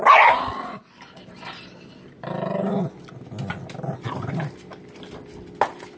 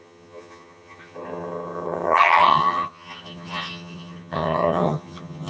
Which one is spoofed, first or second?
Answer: second